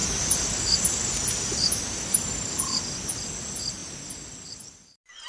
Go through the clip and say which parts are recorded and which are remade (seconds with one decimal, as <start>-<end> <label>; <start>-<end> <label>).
0.0-3.2 recorded; 3.2-3.8 remade; 3.8-4.7 recorded; 4.7-5.3 remade